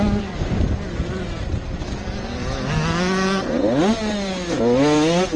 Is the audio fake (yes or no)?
no